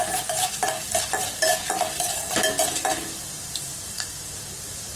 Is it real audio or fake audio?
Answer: real